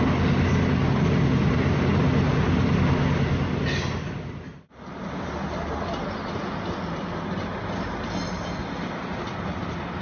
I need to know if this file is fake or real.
real